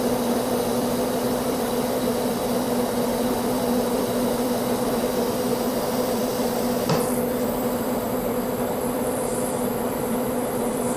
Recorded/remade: remade